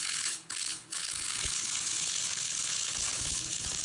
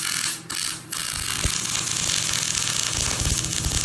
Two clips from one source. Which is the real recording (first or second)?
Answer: second